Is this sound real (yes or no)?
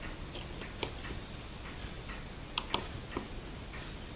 yes